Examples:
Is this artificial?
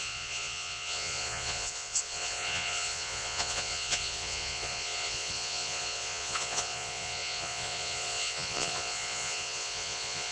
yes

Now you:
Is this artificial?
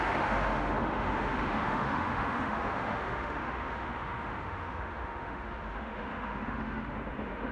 yes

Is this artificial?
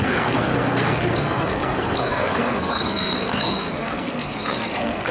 yes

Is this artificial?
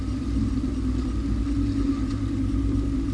no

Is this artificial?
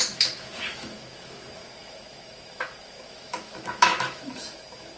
yes